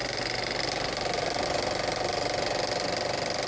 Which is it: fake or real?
real